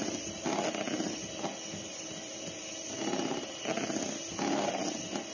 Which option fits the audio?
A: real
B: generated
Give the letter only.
A